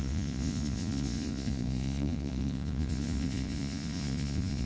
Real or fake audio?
fake